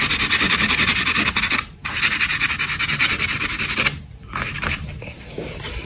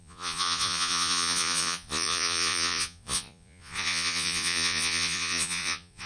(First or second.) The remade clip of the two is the second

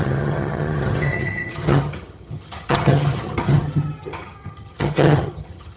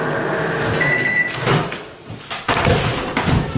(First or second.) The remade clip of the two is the first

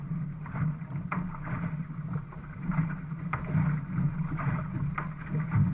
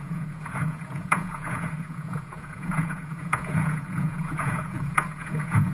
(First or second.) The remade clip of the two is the second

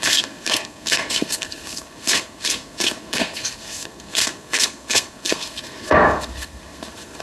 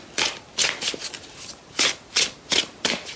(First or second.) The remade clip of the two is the first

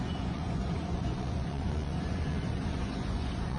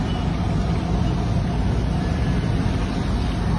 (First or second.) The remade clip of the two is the first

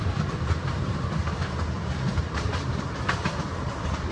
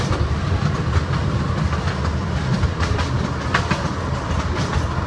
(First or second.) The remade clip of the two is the first